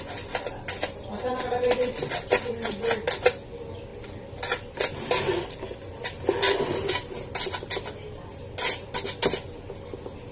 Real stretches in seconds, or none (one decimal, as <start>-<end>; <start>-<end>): 0.0-10.3